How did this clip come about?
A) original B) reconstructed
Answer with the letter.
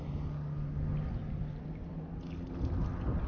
A